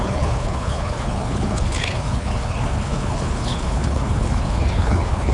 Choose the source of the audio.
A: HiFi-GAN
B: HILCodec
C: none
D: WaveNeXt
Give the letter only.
B